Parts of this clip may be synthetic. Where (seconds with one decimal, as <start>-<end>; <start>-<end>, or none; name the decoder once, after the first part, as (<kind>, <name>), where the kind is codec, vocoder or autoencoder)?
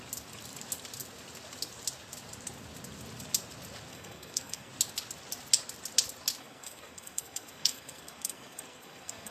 3.9-4.7 (codec, SNAC); 6.4-9.3